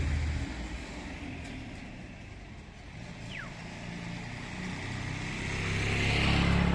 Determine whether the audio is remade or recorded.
recorded